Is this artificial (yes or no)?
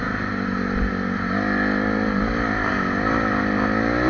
no